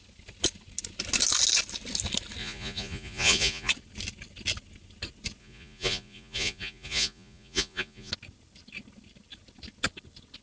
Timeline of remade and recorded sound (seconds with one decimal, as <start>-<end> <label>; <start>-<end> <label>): 0.0-2.4 recorded; 2.4-3.7 remade; 3.7-5.4 recorded; 5.4-8.1 remade; 8.1-10.4 recorded